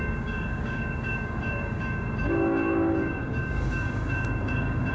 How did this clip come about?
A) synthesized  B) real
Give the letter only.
A